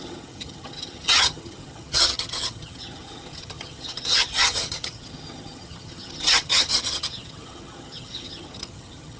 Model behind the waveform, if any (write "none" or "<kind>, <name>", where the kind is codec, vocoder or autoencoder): vocoder, HiFi-GAN